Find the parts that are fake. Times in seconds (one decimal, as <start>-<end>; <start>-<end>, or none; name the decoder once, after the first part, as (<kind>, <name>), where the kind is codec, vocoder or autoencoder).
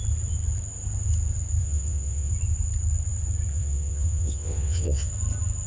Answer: 1.6-2.3 (vocoder, WaveNeXt); 3.5-5.1